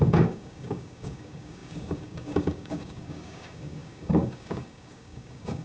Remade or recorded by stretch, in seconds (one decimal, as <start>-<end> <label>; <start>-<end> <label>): 0.0-5.6 remade